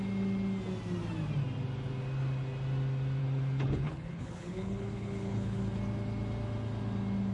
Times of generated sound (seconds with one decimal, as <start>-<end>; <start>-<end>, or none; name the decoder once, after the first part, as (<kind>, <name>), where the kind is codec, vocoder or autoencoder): 3.2-5.6 (codec, HILCodec)